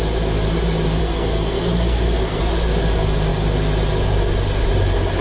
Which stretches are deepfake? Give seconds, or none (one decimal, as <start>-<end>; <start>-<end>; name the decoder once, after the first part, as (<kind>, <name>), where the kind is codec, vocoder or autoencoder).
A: 1.0-2.4 (codec, SNAC)